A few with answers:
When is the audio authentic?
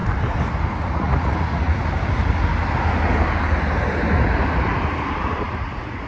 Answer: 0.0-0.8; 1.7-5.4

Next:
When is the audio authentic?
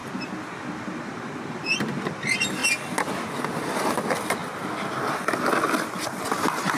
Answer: 0.0-0.6; 2.6-3.4; 4.4-6.8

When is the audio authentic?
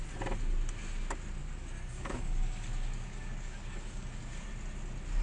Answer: 0.0-1.4; 4.5-5.2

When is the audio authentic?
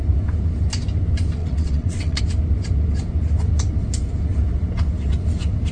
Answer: 0.0-1.4; 2.2-5.7